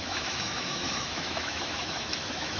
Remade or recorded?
remade